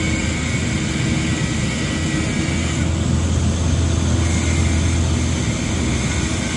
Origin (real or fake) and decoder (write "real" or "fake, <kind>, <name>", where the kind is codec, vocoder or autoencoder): real